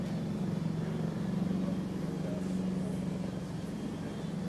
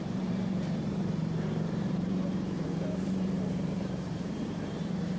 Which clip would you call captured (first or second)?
first